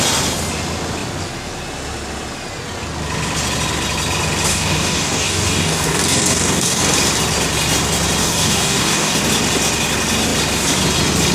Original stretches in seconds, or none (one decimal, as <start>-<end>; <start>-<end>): 0.0-4.5; 6.8-8.2; 9.2-11.3